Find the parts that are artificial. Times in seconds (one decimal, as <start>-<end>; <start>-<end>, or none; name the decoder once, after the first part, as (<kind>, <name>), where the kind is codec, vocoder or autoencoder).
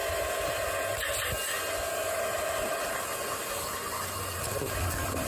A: none